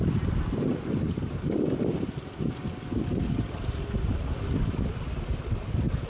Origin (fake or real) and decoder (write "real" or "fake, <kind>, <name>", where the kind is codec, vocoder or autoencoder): real